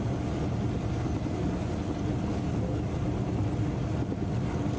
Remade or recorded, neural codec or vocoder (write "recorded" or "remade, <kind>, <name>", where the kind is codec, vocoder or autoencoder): recorded